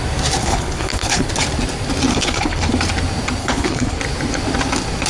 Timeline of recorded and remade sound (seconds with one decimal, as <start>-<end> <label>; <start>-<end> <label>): 0.0-0.4 recorded; 0.4-1.3 remade; 1.3-2.1 recorded; 2.1-2.7 remade; 2.7-3.4 recorded; 3.4-4.0 remade; 4.0-5.1 recorded